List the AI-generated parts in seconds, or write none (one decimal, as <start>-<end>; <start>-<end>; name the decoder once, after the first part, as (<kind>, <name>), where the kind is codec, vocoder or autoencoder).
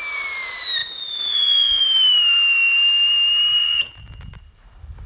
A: 0.8-1.8 (vocoder, Vocos); 3.6-4.4